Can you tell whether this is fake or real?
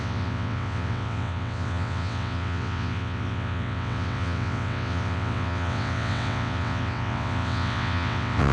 fake